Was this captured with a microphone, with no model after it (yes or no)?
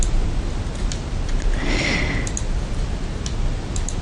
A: yes